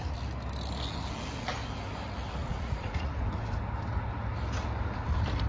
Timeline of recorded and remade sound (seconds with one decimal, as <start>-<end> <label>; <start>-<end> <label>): 0.0-2.4 recorded; 2.4-3.1 remade; 3.1-5.5 recorded